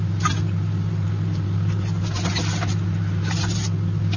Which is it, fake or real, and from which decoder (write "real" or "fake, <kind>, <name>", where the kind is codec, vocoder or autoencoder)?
real